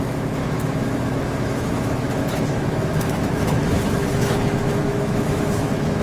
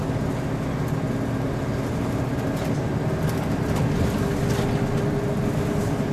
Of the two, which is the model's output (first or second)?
first